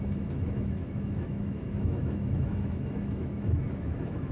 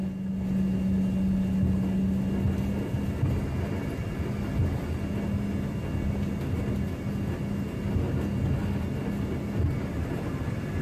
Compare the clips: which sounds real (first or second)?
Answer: second